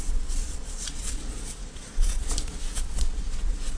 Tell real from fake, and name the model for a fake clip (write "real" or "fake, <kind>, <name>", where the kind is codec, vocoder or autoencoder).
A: fake, vocoder, Vocos